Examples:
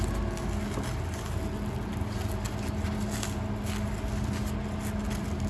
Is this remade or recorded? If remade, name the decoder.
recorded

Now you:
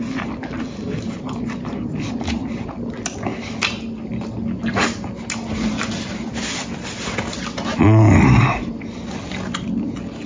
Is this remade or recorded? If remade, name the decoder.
recorded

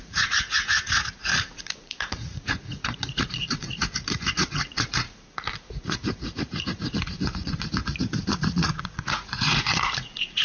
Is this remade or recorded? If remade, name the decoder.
remade, vocoder, Vocos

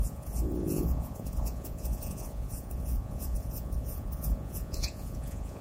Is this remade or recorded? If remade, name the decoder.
remade, vocoder, Vocos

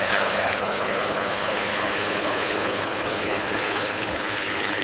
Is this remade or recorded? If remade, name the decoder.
remade, codec, HILCodec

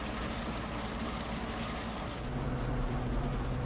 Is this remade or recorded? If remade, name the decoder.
recorded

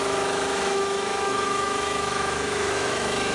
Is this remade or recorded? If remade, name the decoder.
remade, autoencoder, DAC-VAE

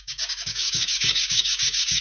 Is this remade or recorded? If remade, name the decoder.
remade, codec, DAC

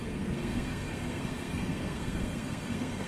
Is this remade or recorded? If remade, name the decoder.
remade, codec, SNAC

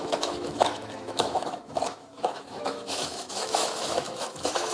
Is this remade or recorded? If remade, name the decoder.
remade, autoencoder, DAC-VAE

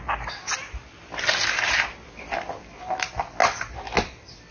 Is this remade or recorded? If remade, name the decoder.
recorded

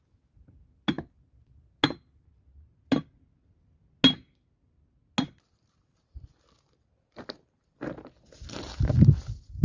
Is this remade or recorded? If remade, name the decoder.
recorded